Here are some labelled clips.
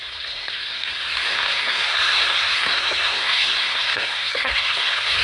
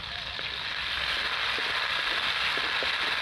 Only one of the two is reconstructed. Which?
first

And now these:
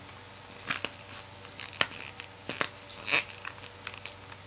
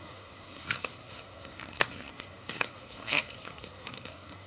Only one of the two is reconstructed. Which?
second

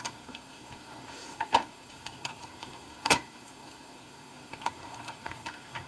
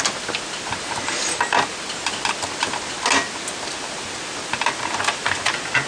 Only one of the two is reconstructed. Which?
first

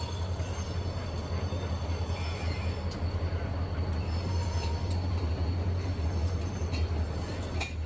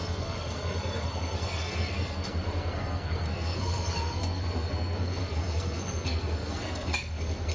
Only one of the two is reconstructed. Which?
second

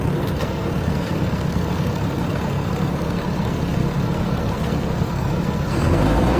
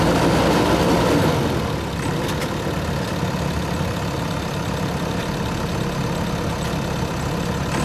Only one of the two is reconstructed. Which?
first